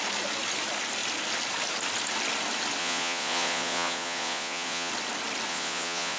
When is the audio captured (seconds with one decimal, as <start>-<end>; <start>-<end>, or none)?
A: 0.0-2.8; 4.9-5.5